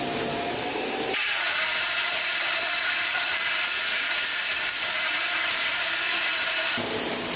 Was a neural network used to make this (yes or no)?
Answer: yes